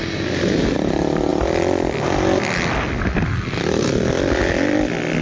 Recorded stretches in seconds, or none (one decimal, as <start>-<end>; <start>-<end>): 0.0-5.2